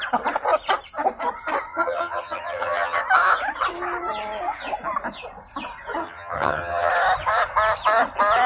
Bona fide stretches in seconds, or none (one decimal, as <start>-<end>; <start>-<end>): 0.0-1.7; 3.0-6.0; 6.9-8.5